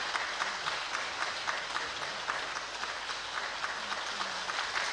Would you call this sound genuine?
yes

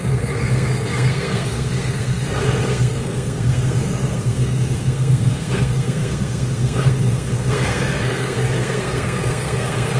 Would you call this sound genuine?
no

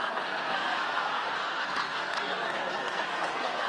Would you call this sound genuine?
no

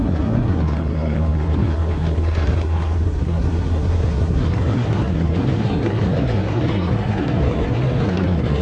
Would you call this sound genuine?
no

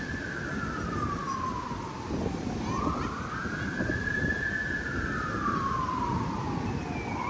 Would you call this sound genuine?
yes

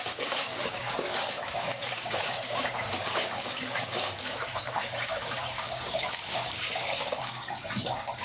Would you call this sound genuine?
no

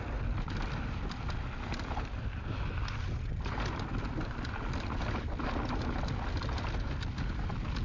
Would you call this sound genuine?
yes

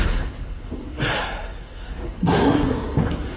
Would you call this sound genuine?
no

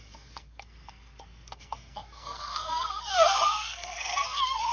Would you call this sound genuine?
no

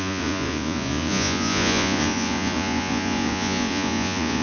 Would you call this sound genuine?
no